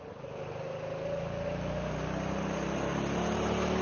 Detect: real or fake real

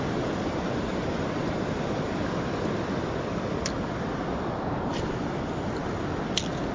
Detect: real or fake fake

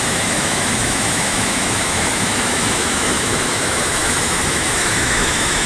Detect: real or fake fake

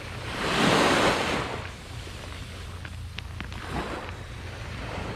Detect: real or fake real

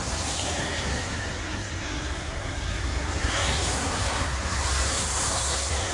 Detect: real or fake fake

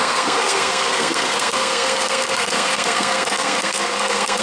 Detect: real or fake fake